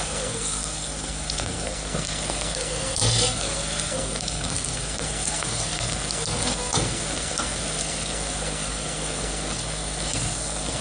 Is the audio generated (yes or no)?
yes